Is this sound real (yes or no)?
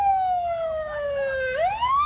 yes